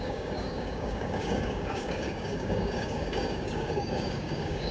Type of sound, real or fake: fake